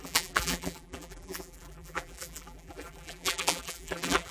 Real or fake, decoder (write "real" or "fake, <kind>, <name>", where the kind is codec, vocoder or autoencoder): fake, vocoder, BigVGAN v2